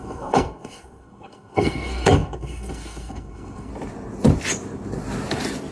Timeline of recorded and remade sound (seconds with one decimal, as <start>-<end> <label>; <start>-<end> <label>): 0.0-3.7 remade; 3.7-5.7 recorded